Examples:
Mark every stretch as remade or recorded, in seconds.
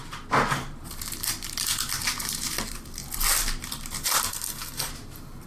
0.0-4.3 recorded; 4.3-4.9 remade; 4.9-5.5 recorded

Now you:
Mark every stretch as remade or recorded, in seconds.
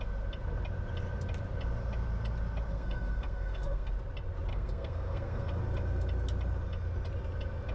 0.0-2.7 recorded; 2.7-3.9 remade; 3.9-4.5 recorded; 4.5-5.6 remade; 5.6-7.7 recorded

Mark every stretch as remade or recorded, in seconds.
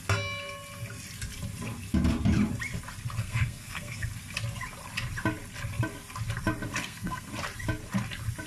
0.0-3.2 recorded; 3.2-4.1 remade; 4.1-6.8 recorded; 6.8-7.3 remade; 7.3-8.5 recorded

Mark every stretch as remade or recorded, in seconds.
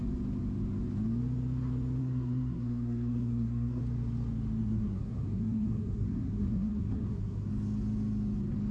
0.0-2.0 recorded; 2.0-3.8 remade; 3.8-4.6 recorded; 4.6-7.5 remade; 7.5-8.7 recorded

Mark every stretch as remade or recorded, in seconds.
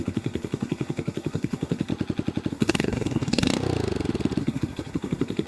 0.0-1.9 remade; 1.9-2.5 recorded; 2.5-3.5 remade; 3.5-4.4 recorded; 4.4-5.5 remade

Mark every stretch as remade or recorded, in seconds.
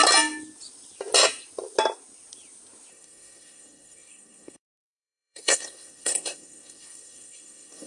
0.0-2.9 recorded; 2.9-7.9 remade